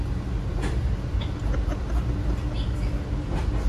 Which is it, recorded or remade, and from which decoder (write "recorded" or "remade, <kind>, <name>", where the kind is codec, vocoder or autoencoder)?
recorded